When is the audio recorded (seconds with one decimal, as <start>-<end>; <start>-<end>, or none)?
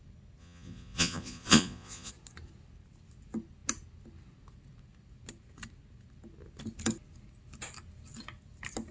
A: 0.0-0.4; 2.1-8.9